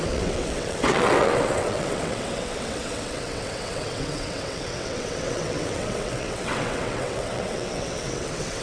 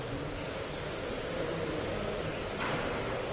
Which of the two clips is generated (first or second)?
first